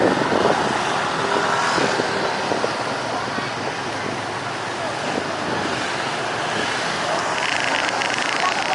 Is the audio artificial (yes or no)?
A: no